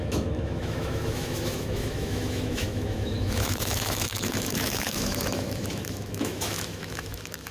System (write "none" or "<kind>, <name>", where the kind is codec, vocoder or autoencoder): autoencoder, DAC-VAE